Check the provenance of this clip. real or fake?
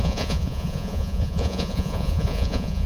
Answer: fake